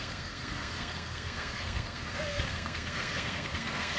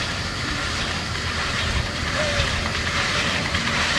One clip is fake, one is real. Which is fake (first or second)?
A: first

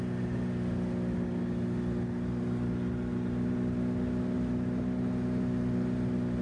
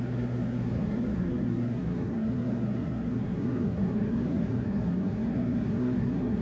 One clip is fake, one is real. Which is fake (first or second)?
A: second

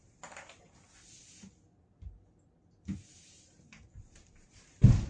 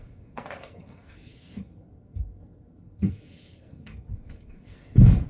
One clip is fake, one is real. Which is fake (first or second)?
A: second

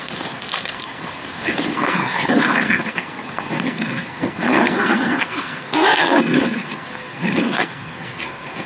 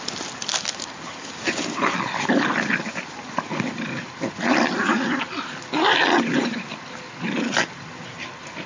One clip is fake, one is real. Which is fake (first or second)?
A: first